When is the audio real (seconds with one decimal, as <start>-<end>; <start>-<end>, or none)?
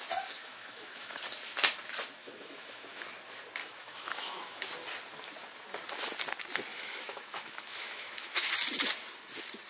0.0-0.4; 1.2-2.2; 3.0-3.6; 4.6-6.7; 8.5-9.7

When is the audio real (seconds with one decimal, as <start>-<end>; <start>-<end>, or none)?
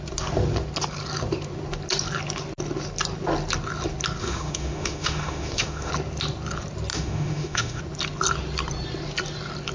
0.0-4.2; 5.9-6.9; 7.8-9.7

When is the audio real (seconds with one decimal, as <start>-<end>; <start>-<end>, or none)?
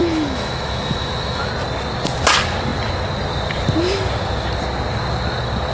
1.5-5.7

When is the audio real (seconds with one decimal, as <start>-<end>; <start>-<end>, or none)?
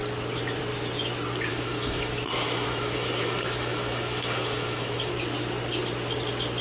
0.0-1.5; 5.1-6.6